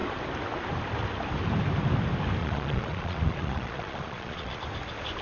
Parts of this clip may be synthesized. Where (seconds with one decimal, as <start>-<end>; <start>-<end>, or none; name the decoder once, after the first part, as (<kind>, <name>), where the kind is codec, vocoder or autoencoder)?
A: 2.4-4.6 (vocoder, Vocos)